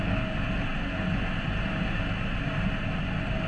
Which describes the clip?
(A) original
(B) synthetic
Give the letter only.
A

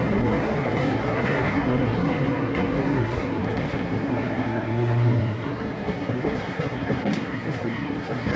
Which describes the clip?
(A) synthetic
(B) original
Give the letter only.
A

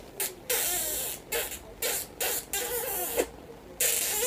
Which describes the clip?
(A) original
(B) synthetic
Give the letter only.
A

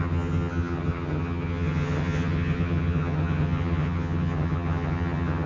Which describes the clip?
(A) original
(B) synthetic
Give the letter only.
B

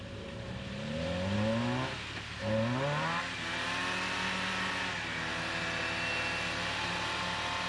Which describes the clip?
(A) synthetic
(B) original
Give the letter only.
B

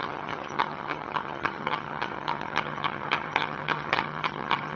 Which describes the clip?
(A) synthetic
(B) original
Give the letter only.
A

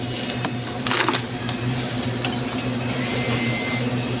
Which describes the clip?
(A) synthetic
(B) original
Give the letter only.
B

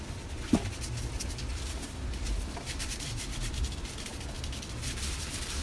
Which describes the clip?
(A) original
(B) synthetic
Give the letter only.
B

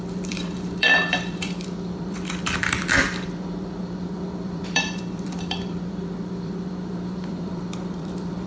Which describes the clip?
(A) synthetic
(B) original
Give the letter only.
A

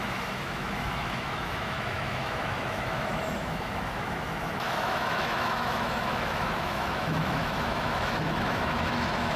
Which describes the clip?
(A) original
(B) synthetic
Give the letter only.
B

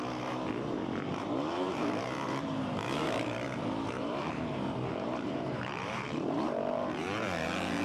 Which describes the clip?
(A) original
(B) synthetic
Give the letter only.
B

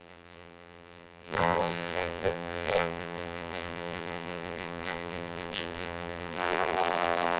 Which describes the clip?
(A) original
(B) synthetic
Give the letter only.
B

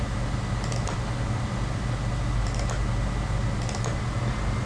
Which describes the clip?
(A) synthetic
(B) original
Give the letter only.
B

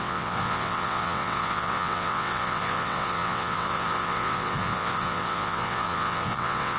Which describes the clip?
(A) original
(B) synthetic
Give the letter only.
B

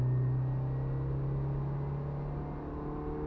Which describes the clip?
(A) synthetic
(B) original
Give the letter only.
B